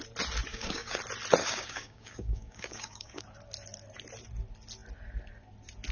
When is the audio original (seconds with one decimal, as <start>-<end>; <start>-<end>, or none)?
0.0-0.5; 1.0-1.4; 3.2-5.9